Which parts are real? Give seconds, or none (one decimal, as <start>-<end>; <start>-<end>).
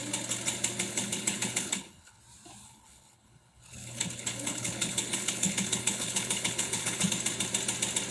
0.0-0.9; 2.2-2.6; 7.1-8.1